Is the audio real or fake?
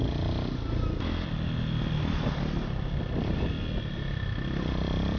real